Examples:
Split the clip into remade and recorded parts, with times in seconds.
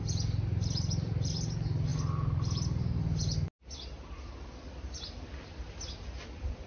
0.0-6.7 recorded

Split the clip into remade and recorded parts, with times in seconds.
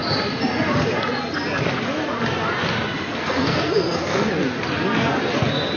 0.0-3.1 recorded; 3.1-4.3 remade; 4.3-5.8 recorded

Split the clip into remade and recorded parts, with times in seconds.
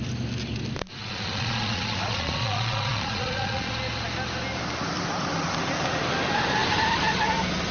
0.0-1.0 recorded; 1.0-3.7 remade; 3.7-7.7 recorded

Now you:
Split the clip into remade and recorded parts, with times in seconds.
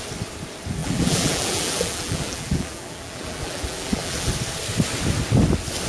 0.0-0.8 recorded; 0.8-4.3 remade; 4.3-5.9 recorded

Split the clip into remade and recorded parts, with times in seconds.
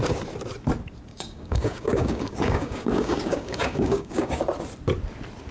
0.0-1.1 recorded; 1.1-4.4 remade; 4.4-5.5 recorded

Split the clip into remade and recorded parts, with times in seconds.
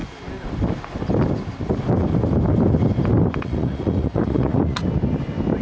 0.0-3.4 recorded; 3.4-4.8 remade; 4.8-5.6 recorded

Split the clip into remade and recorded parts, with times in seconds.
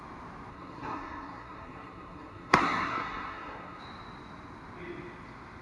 0.0-0.5 recorded; 0.5-3.8 remade; 3.8-5.6 recorded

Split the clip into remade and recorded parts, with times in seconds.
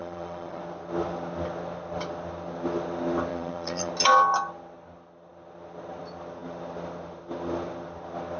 0.0-0.6 remade; 0.6-3.3 recorded; 3.3-3.9 remade; 3.9-8.4 recorded